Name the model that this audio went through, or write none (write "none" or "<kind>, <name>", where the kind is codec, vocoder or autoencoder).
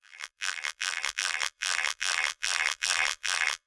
vocoder, BigVGAN v2